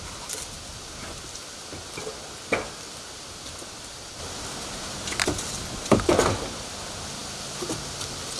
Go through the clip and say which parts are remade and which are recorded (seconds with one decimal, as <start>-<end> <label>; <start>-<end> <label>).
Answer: 0.0-8.4 recorded